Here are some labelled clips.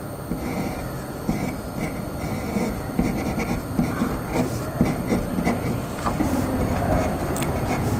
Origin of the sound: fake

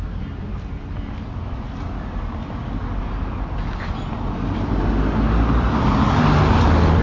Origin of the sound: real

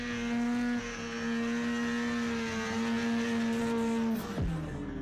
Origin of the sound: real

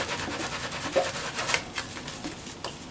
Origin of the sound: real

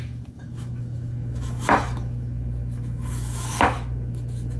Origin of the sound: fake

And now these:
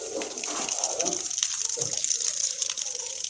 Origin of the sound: fake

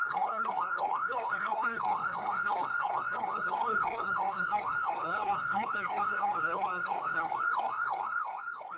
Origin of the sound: fake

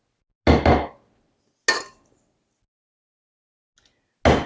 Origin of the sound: real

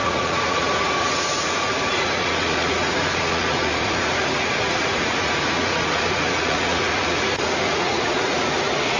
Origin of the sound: fake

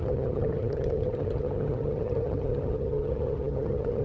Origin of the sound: fake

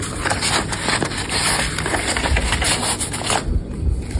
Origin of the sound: real